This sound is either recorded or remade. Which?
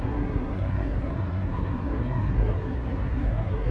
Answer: remade